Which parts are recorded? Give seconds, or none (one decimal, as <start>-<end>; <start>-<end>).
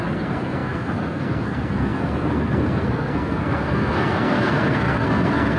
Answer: none